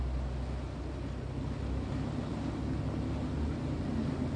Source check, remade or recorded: recorded